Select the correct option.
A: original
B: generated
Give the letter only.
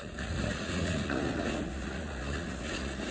B